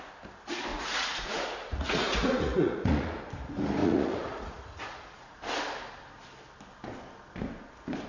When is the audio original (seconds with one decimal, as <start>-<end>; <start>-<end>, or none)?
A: 0.0-0.7; 3.2-3.8; 5.4-8.1